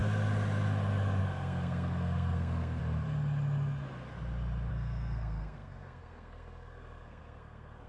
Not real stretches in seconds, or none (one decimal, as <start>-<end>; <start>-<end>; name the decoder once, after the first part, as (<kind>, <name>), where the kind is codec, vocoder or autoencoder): 1.2-2.8 (codec, SNAC); 4.7-7.9

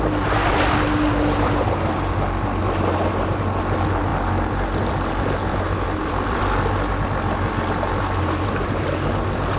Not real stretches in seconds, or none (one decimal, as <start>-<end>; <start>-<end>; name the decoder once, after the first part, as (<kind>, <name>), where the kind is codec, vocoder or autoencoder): none